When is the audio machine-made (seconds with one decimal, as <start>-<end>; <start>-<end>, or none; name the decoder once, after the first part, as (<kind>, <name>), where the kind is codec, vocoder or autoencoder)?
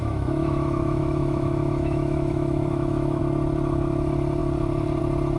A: 0.0-3.2 (autoencoder, DAC-VAE)